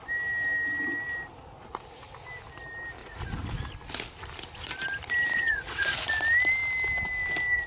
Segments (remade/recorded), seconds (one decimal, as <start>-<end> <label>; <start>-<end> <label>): 0.0-3.0 recorded; 3.0-3.7 remade; 3.7-5.3 recorded; 5.3-6.1 remade; 6.1-7.7 recorded